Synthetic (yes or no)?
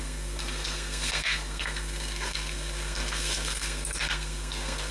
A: yes